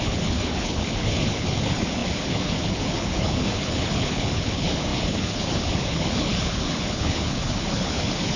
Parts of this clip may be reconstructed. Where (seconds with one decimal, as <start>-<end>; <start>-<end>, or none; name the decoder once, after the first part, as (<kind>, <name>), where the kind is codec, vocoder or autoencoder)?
0.0-8.4 (codec, HILCodec)